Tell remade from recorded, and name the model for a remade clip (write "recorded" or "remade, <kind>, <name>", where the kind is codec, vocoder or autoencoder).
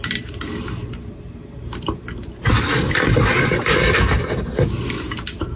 recorded